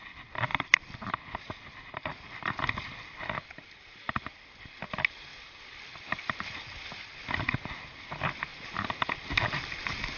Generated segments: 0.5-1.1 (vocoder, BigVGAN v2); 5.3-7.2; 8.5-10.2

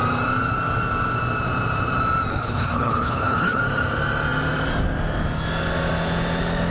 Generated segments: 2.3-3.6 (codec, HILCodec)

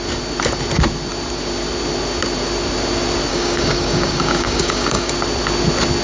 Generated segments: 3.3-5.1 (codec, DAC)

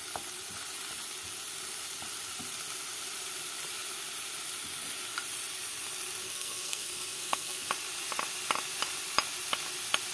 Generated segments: 6.2-7.7 (codec, SNAC)